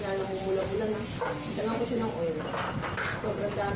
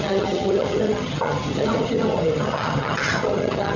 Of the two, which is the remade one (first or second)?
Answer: second